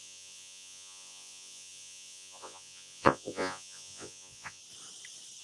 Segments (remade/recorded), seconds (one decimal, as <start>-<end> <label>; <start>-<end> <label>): 0.0-4.6 remade; 4.6-5.4 recorded